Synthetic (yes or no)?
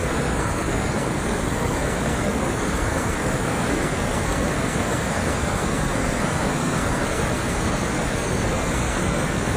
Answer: yes